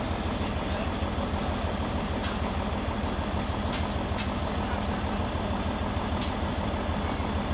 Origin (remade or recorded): recorded